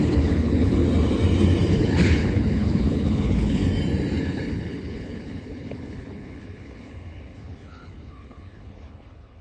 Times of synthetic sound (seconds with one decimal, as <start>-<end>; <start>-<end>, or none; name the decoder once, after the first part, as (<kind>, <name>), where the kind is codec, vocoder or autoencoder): 0.0-0.8 (codec, HILCodec); 1.7-3.6; 4.2-9.4